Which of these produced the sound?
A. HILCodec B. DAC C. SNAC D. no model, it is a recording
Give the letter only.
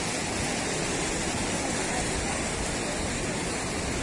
D